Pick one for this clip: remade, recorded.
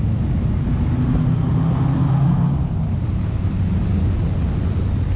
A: recorded